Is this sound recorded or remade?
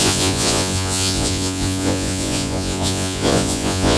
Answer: remade